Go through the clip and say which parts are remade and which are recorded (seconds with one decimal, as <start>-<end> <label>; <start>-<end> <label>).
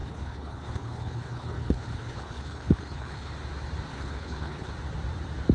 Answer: 0.0-3.3 remade; 3.3-3.9 recorded; 3.9-4.7 remade; 4.7-5.5 recorded